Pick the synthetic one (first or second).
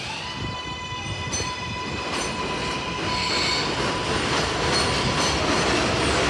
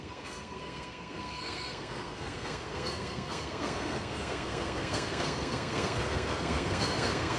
second